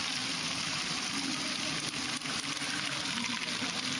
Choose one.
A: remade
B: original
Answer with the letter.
B